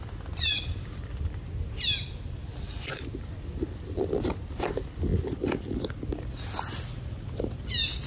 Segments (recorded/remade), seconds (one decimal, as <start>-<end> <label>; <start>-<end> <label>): 0.0-8.1 recorded